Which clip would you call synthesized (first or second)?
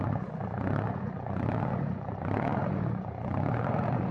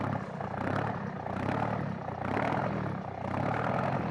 first